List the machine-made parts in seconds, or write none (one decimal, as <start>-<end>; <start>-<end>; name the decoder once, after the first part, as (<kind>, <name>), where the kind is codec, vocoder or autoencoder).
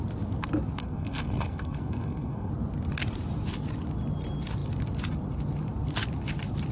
0.8-2.5 (codec, SNAC)